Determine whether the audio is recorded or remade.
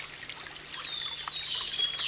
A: recorded